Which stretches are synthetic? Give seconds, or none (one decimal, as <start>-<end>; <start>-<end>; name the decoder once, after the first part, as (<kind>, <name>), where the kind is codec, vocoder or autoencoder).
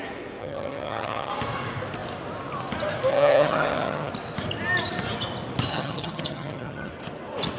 0.4-1.3 (vocoder, HiFi-GAN); 3.1-4.1; 5.7-6.9